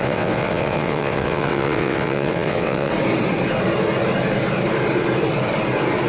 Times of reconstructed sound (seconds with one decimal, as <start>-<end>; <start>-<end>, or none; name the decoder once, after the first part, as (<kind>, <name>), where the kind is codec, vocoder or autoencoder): 0.0-2.9 (vocoder, WaveNeXt)